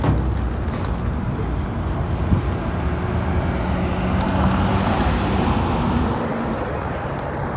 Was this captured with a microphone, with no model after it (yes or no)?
yes